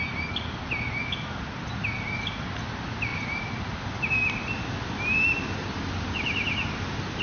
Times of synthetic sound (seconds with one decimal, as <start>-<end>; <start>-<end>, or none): none